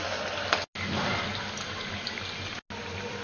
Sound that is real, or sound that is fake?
real